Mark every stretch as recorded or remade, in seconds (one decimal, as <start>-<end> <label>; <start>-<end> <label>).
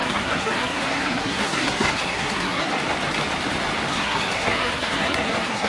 0.0-2.7 remade; 2.7-3.9 recorded; 3.9-5.7 remade